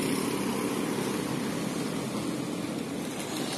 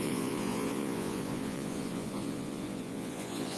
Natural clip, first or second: first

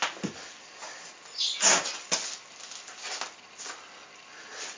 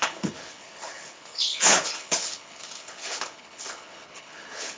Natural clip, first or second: first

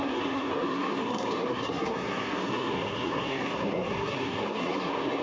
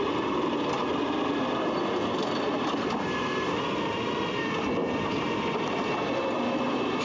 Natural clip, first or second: second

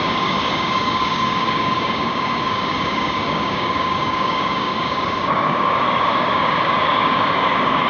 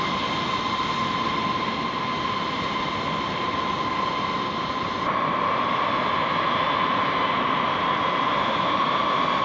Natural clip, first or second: second